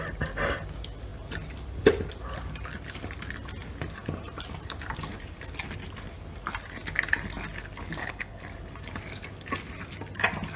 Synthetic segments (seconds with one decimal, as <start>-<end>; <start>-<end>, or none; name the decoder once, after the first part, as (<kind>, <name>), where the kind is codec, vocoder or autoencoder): 8.0-8.5 (codec, HILCodec)